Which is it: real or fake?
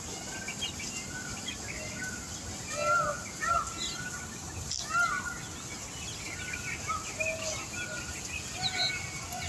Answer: real